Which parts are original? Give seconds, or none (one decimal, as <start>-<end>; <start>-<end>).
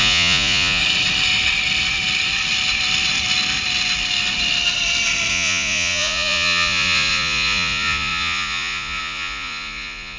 0.8-5.3